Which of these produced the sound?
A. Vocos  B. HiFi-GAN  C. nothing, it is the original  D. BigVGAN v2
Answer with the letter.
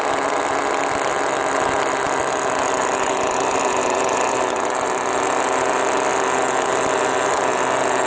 C